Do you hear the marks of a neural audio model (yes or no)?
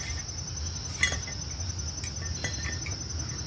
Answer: no